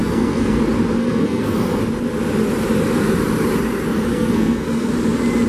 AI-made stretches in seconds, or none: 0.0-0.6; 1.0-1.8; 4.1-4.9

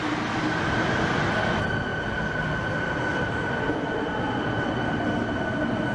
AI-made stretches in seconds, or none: none

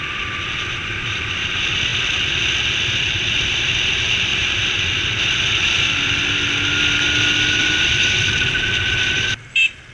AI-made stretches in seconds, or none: 0.0-1.9; 2.5-6.2; 7.6-9.9